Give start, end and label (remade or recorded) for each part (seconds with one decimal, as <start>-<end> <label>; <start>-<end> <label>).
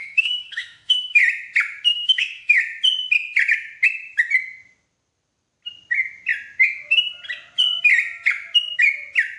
0.0-1.2 remade; 1.2-1.9 recorded; 1.9-2.6 remade; 2.6-9.4 recorded